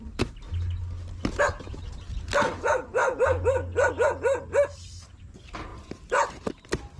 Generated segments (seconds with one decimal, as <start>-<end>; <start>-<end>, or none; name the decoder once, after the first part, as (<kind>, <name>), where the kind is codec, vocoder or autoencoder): 5.7-6.3 (vocoder, BigVGAN v2)